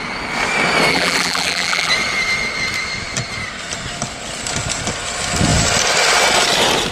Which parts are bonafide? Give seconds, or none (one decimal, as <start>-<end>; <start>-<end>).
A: 0.0-0.9; 1.9-6.9